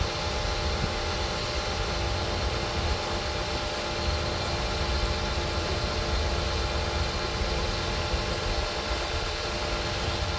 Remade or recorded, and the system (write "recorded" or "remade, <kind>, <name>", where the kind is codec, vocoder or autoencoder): recorded